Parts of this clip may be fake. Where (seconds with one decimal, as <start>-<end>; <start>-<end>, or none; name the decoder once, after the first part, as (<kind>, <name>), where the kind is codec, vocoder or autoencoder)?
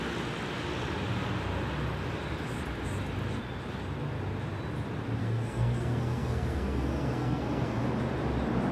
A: 5.2-7.8 (codec, SNAC)